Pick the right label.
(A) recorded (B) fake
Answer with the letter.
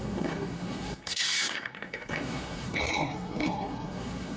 B